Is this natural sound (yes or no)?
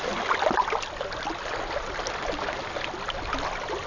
yes